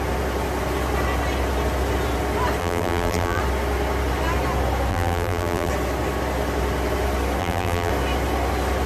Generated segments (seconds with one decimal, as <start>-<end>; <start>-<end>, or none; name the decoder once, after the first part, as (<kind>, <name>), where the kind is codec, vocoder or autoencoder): 2.6-3.4 (vocoder, BigVGAN v2); 4.9-5.7; 7.4-7.9